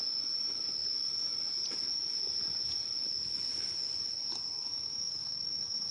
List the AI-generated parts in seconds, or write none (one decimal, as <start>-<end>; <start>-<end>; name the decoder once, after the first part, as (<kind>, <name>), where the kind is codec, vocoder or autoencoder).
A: 4.7-5.9 (autoencoder, DAC-VAE)